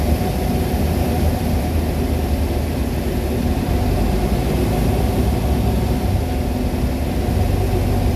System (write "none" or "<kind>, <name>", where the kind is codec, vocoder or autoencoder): none